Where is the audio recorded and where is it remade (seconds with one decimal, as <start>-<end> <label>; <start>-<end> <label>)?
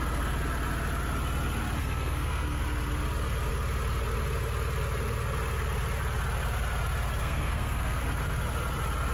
0.0-1.8 recorded; 1.8-2.6 remade; 2.6-7.2 recorded; 7.2-8.0 remade; 8.0-9.1 recorded